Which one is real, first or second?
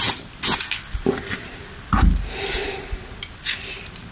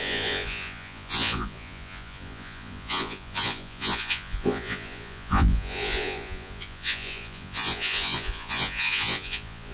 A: first